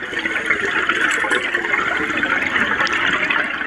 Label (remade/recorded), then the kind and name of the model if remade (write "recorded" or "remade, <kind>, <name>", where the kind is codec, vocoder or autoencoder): recorded